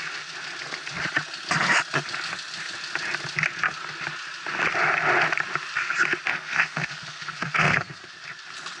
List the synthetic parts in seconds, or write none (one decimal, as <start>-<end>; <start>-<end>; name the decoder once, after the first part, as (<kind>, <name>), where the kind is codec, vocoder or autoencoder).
6.3-8.1 (codec, SNAC)